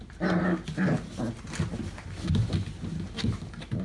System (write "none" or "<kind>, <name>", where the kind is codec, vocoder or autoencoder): none